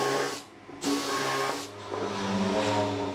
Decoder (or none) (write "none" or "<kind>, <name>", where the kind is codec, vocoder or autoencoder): none